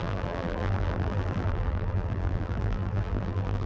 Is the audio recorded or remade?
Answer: remade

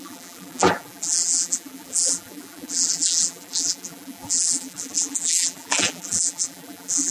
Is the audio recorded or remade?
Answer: remade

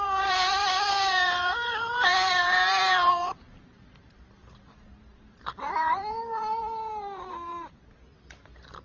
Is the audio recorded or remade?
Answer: remade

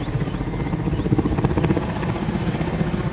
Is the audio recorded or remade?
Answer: recorded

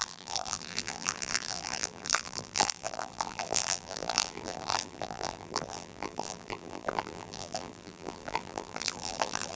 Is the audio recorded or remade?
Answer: remade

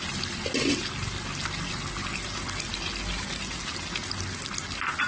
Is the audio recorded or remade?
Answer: recorded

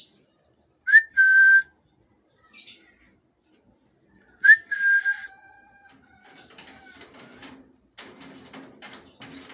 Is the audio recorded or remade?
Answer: recorded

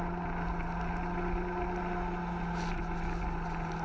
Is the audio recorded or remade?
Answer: recorded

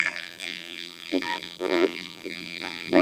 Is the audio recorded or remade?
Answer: remade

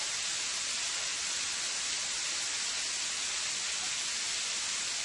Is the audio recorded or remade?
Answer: recorded